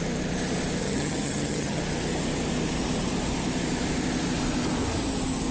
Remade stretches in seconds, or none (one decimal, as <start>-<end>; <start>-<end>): 0.8-1.8